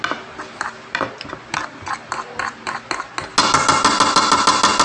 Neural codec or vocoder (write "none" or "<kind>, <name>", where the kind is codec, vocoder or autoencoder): none